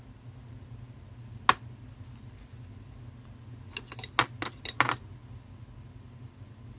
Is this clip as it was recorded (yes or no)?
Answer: yes